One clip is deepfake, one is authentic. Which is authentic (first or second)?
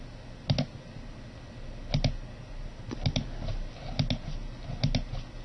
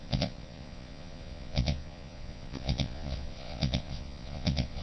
first